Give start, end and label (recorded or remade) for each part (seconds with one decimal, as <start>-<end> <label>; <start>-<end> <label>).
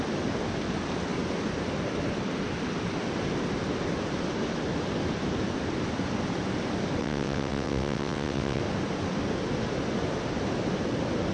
0.0-7.0 recorded; 7.0-8.6 remade; 8.6-11.3 recorded